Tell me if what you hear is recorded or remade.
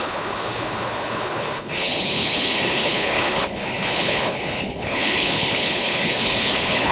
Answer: remade